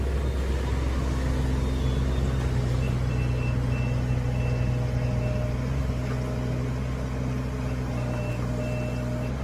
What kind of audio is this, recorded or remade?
recorded